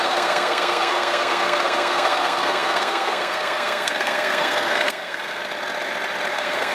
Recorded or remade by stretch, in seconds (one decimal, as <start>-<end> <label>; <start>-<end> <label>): 0.0-5.4 remade; 5.4-6.3 recorded; 6.3-6.7 remade